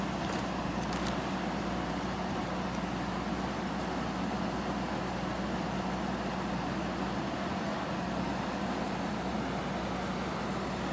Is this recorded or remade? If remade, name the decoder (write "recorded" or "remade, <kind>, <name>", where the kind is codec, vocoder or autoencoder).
recorded